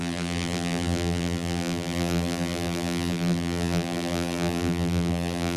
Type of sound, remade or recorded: remade